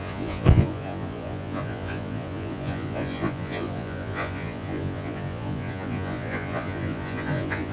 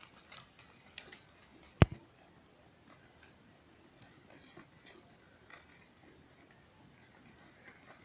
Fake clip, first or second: first